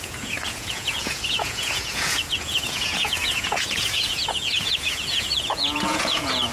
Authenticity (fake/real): fake